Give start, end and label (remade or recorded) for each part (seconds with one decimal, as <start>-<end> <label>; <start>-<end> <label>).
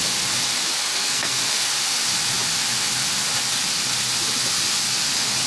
0.0-0.9 recorded; 0.9-1.7 remade; 1.7-5.5 recorded